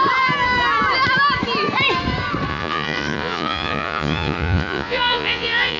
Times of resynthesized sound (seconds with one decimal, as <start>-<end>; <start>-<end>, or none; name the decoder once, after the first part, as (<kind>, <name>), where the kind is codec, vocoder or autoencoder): 2.5-5.8 (vocoder, Vocos)